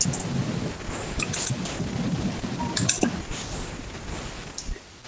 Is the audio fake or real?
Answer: real